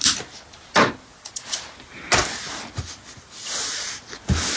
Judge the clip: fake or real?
real